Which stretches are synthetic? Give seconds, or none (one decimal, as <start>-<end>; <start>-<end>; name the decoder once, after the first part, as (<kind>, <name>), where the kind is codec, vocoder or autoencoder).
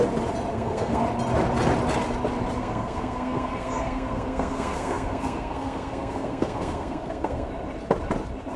0.5-1.0 (codec, SNAC); 2.6-7.5